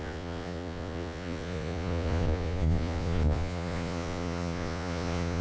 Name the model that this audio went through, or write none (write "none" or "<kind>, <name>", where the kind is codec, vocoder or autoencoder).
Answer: vocoder, Vocos